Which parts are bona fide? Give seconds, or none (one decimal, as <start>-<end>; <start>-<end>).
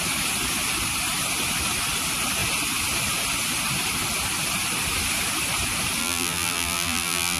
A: 0.0-6.0